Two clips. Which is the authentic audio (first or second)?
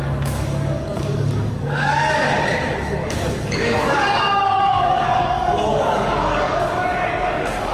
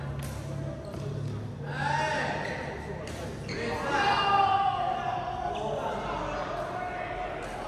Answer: second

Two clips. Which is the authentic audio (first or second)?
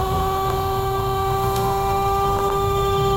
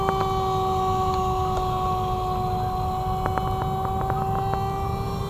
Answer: second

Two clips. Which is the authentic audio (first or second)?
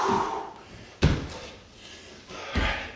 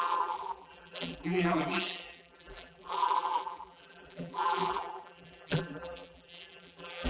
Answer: first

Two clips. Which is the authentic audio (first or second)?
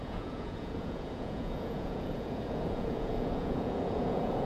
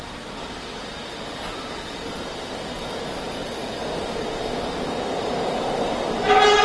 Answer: second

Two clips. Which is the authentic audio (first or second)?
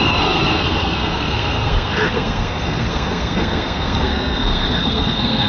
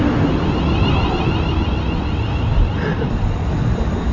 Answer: second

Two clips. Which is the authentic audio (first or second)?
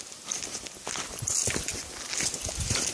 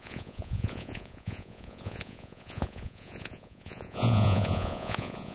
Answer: first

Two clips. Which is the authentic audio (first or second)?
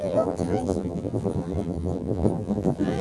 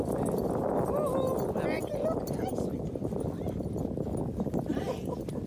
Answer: second